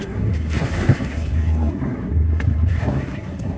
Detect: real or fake fake